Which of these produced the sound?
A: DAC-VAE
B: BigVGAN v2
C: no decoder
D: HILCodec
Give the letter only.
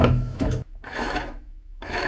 A